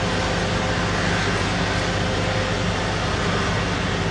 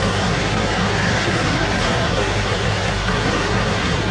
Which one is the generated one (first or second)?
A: second